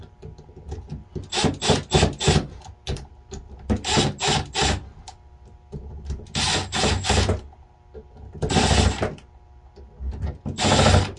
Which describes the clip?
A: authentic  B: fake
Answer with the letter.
A